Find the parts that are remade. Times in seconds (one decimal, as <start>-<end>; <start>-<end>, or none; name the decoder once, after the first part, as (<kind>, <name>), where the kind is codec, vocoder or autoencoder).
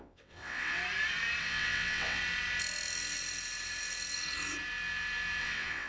0.0-0.8 (vocoder, WaveNeXt); 1.4-2.2; 5.4-5.9